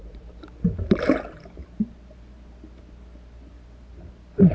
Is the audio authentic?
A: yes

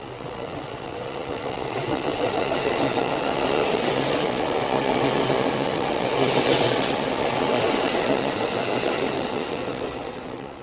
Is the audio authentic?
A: no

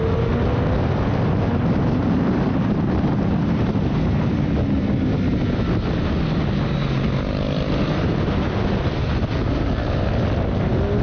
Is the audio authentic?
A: yes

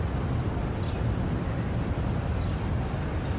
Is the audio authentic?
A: yes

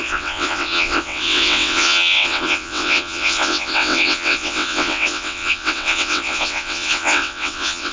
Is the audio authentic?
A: no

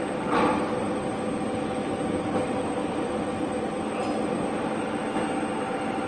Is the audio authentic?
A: yes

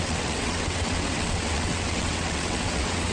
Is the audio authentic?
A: no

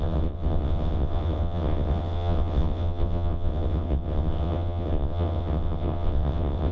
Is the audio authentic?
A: no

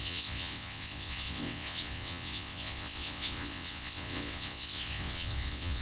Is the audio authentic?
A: no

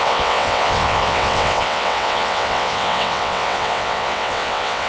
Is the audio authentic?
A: no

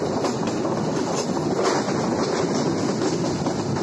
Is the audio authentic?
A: yes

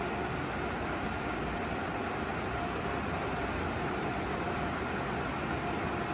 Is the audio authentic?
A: yes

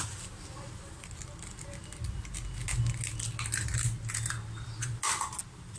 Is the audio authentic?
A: yes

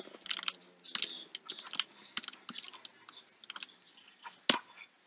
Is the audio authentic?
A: yes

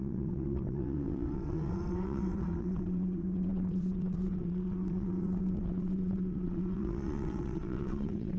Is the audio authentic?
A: no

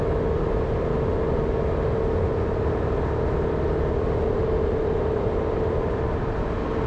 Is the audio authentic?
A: yes